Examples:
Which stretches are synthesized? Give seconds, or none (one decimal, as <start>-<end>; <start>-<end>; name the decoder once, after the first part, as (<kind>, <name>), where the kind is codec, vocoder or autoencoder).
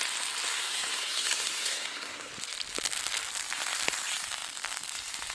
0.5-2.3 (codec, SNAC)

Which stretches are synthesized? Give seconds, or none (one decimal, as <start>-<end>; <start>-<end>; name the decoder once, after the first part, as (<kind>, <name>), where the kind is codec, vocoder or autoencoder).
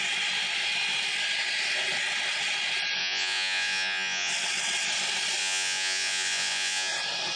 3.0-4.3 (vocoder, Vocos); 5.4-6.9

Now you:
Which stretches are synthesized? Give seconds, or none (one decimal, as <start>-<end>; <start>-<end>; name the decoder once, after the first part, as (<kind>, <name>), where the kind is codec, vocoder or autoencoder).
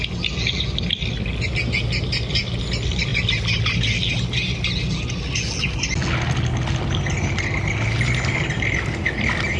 none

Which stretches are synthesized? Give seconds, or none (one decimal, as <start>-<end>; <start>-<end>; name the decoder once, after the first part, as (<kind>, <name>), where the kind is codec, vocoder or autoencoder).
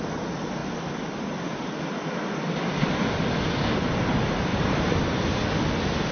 4.5-5.0 (vocoder, BigVGAN v2)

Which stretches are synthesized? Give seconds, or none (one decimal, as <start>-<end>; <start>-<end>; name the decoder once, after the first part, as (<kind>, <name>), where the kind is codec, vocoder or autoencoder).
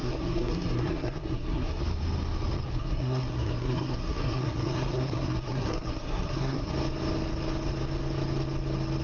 0.0-1.8 (codec, SNAC); 2.7-6.7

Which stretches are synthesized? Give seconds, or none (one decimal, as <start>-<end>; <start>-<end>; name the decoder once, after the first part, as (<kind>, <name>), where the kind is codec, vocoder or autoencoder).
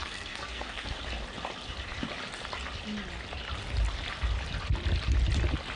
0.0-1.0 (codec, SNAC)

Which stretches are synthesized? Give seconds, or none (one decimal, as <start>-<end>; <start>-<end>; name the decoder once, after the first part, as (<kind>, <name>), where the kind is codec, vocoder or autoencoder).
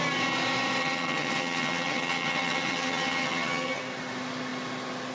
0.8-3.8 (vocoder, HiFi-GAN)